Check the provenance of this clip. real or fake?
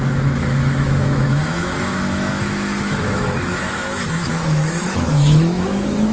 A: fake